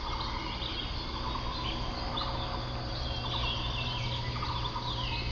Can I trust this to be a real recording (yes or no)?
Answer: yes